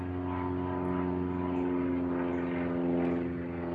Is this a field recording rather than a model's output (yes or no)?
yes